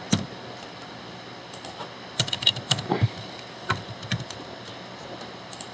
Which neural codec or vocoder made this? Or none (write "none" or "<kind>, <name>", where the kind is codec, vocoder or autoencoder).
none